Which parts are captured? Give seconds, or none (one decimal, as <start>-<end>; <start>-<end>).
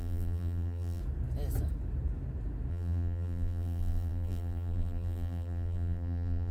1.0-2.7